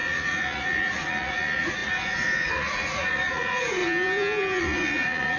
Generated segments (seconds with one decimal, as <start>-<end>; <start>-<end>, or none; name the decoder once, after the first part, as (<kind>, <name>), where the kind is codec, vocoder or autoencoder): 0.0-3.8 (vocoder, Vocos); 4.6-5.4